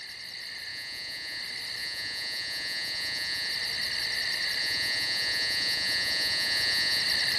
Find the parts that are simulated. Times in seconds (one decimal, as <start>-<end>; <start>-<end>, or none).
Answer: 0.7-1.4; 1.8-3.5; 4.6-7.0